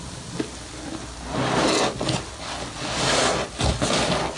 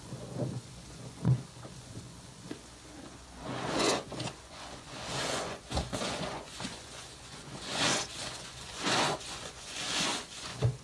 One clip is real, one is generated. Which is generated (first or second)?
second